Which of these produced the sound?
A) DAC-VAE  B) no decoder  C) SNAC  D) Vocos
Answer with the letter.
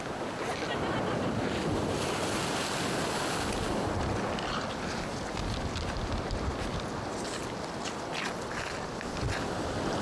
B